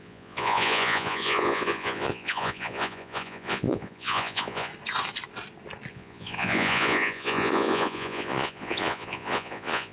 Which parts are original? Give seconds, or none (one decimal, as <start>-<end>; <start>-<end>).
4.7-5.9